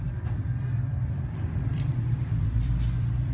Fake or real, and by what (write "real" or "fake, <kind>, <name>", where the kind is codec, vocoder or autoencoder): fake, vocoder, BigVGAN v2